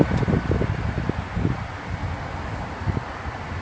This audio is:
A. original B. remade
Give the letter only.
A